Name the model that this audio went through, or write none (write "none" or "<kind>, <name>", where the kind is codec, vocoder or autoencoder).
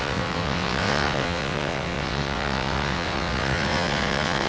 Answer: vocoder, WaveNeXt